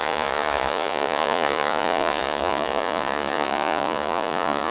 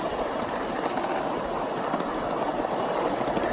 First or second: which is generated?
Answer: first